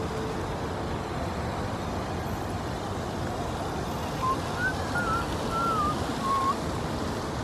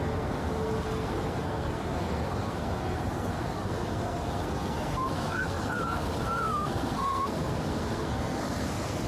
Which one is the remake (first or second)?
second